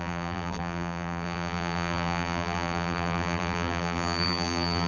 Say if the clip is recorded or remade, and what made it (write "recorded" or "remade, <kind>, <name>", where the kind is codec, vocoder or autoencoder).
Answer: remade, vocoder, BigVGAN v2